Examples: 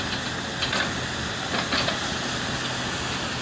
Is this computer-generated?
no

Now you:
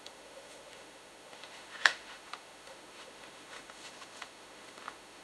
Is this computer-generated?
yes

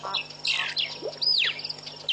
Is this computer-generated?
no